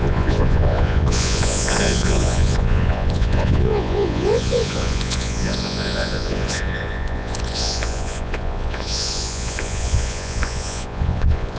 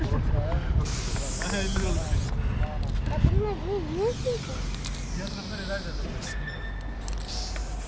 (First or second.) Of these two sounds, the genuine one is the second